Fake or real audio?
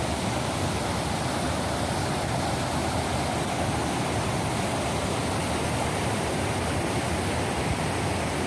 real